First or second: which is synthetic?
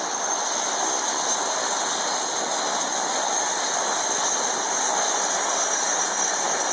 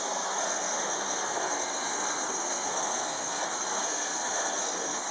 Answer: second